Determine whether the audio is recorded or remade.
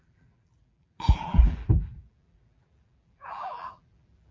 remade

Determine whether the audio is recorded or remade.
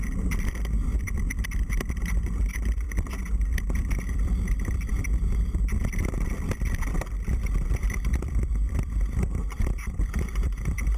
remade